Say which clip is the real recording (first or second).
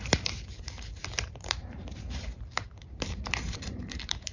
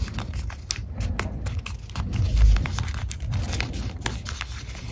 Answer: second